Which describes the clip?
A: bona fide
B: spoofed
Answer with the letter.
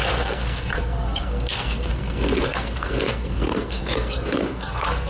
B